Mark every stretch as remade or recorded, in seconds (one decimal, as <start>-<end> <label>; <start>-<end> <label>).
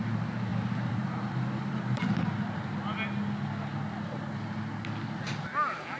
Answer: 0.0-0.5 recorded; 0.5-2.3 remade; 2.3-6.0 recorded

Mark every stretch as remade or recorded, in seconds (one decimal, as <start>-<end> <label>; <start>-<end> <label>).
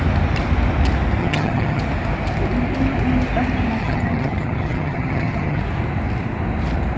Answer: 0.0-1.2 recorded; 1.2-1.8 remade; 1.8-3.8 recorded; 3.8-5.6 remade; 5.6-7.0 recorded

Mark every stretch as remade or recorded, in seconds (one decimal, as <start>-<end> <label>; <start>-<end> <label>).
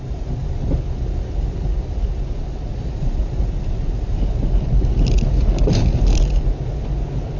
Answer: 0.0-7.4 recorded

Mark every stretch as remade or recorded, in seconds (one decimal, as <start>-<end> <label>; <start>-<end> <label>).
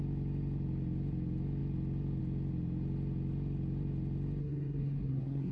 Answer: 0.0-4.4 recorded; 4.4-5.5 remade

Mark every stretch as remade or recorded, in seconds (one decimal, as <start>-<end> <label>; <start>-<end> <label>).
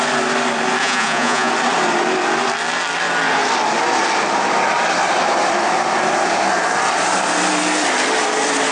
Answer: 0.0-0.8 recorded; 0.8-1.5 remade; 1.5-8.7 recorded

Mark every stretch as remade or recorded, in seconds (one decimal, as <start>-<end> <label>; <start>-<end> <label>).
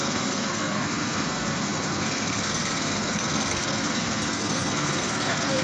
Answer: 0.0-5.6 remade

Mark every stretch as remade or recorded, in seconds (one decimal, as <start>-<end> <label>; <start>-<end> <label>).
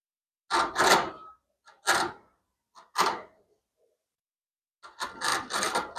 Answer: 0.0-6.0 recorded